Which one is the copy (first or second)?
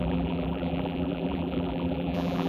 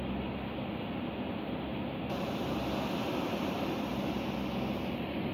first